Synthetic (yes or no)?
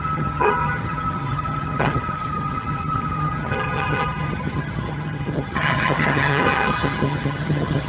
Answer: yes